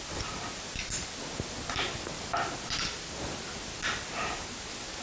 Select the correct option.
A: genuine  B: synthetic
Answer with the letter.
A